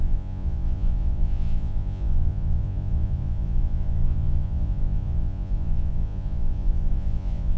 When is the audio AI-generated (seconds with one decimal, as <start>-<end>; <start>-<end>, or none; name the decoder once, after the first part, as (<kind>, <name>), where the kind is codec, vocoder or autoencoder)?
0.0-7.6 (vocoder, Vocos)